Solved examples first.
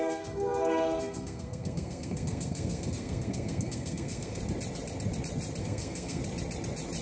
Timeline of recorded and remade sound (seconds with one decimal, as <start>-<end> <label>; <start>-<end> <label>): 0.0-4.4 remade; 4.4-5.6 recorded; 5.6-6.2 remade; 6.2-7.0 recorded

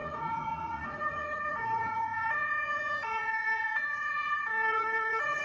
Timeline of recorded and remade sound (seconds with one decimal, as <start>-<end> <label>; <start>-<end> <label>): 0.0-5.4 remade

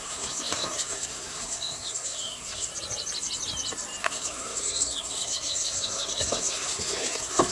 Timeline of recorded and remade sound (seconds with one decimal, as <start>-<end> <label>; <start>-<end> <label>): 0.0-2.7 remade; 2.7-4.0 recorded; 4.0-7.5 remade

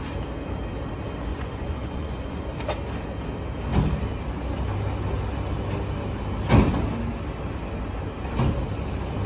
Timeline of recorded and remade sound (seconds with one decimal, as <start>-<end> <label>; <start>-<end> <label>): 0.0-1.3 recorded; 1.3-2.4 remade; 2.4-9.3 recorded

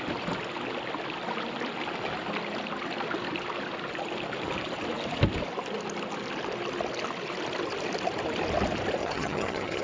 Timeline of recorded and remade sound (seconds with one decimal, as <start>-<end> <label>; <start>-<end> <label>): 0.0-9.0 recorded; 9.0-9.8 remade

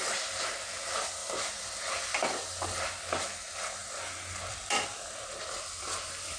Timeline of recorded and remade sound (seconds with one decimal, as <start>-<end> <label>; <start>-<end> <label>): 0.0-1.2 recorded; 1.2-2.8 remade; 2.8-3.8 recorded; 3.8-5.4 remade; 5.4-6.4 recorded